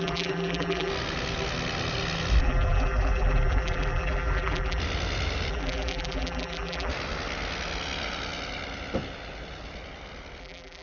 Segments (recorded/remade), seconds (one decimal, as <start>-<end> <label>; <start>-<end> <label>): 0.0-0.9 remade; 0.9-2.4 recorded; 2.4-4.8 remade; 4.8-5.5 recorded; 5.5-6.9 remade; 6.9-10.4 recorded; 10.4-10.8 remade